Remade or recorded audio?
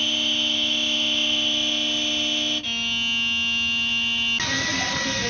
recorded